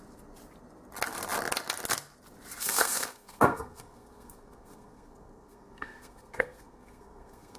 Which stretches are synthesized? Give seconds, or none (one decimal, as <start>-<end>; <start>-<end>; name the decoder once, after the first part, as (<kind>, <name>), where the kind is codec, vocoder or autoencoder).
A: 2.6-7.6 (codec, SNAC)